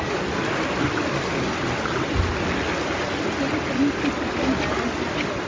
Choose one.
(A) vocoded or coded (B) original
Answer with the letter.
B